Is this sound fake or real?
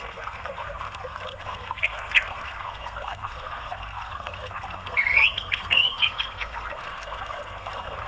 fake